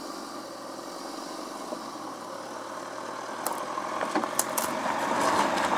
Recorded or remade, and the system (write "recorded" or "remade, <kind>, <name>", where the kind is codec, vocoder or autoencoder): recorded